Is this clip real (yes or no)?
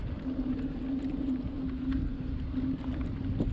yes